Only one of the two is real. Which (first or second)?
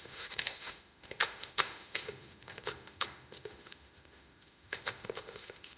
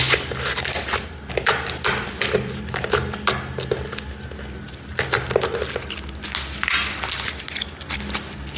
second